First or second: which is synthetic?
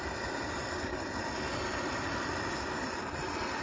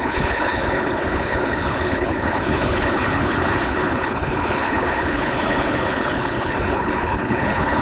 second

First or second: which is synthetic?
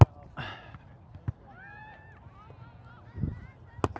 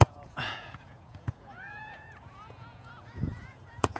second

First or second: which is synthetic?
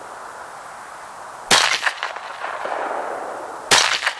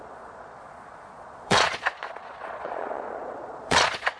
second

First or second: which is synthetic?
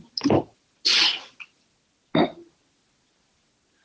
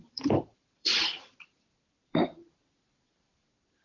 second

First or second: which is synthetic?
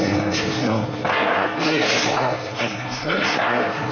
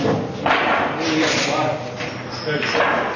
first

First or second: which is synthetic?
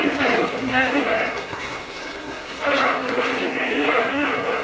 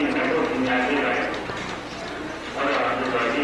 first